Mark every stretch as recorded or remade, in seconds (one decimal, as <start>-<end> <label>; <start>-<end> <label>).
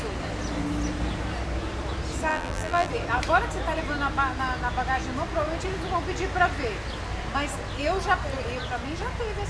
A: 0.0-2.3 recorded; 2.3-2.9 remade; 2.9-9.5 recorded